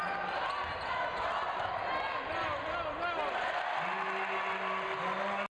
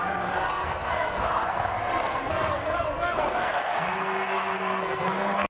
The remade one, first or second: second